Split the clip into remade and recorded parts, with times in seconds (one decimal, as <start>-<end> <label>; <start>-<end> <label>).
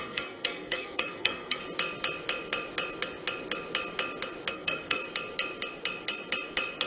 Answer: 0.0-1.6 remade; 1.6-4.5 recorded; 4.5-5.0 remade; 5.0-6.9 recorded